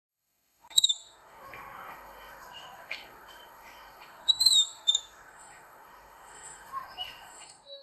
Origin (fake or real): fake